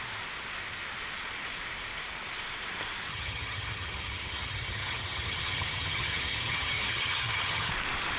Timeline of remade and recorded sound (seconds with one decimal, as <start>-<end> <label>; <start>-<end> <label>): 0.0-3.1 recorded; 3.1-7.7 remade; 7.7-8.2 recorded